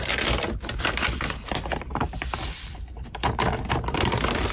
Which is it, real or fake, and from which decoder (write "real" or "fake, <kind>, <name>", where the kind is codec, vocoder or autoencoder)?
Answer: real